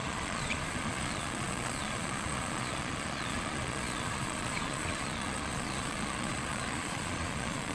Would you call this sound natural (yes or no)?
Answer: no